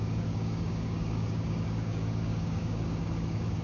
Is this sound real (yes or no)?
no